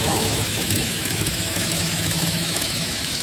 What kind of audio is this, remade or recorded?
remade